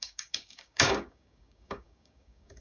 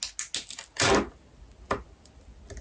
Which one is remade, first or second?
first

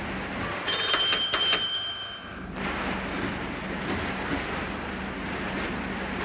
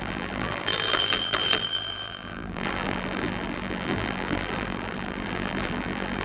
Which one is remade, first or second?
second